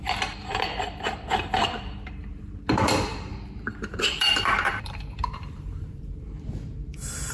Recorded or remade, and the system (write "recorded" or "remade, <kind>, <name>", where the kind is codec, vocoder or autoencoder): remade, vocoder, BigVGAN v2